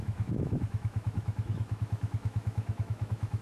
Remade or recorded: remade